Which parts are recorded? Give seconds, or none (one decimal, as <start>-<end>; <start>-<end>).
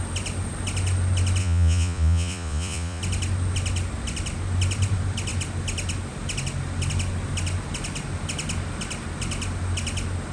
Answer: 0.0-1.4; 3.0-10.3